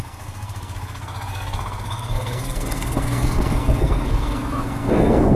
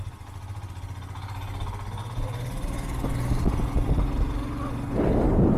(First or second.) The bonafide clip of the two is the second